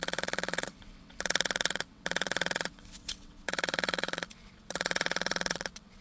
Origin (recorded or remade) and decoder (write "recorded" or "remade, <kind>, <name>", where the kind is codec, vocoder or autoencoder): remade, vocoder, WaveNeXt